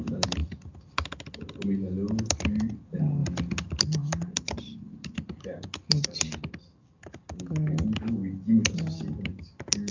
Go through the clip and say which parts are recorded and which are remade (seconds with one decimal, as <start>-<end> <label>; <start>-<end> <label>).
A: 0.0-9.9 recorded